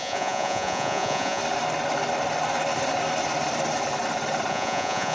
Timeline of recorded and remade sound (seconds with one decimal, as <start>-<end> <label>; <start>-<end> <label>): 0.0-1.4 remade; 1.4-4.5 recorded; 4.5-5.1 remade